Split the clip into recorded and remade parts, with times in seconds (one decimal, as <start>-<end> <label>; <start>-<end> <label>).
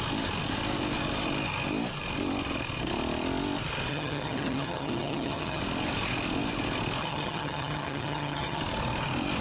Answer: 0.0-3.9 recorded; 3.9-5.6 remade; 5.6-7.0 recorded; 7.0-8.6 remade; 8.6-9.4 recorded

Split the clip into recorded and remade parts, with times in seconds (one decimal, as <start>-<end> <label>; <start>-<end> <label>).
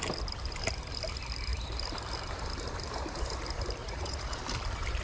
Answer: 0.0-3.8 recorded; 3.8-4.4 remade; 4.4-5.0 recorded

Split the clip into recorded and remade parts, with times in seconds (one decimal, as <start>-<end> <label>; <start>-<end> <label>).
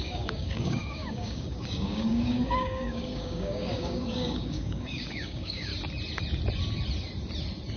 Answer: 0.0-5.7 remade; 5.7-7.8 recorded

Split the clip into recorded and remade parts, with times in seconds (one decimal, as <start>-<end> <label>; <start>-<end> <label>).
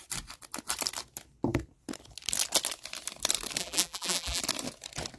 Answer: 0.0-3.6 recorded; 3.6-4.4 remade; 4.4-5.2 recorded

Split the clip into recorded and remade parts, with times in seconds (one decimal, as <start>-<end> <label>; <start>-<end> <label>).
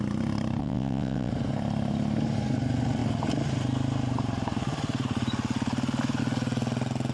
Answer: 0.0-0.6 recorded; 0.6-1.3 remade; 1.3-7.1 recorded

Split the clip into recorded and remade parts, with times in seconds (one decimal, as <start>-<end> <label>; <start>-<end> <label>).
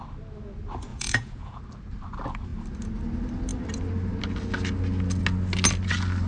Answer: 0.0-0.9 recorded; 0.9-1.6 remade; 1.6-6.3 recorded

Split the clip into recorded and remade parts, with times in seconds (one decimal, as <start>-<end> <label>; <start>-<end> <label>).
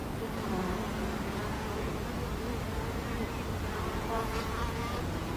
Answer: 0.0-1.5 recorded; 1.5-1.9 remade; 1.9-4.0 recorded; 4.0-5.4 remade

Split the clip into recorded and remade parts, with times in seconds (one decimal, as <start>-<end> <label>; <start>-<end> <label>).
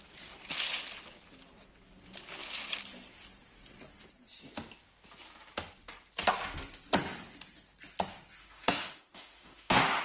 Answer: 0.0-8.4 recorded; 8.4-10.0 remade